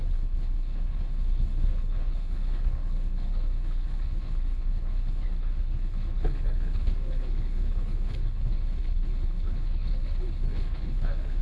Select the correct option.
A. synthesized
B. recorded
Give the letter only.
A